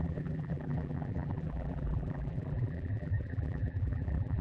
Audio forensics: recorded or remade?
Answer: remade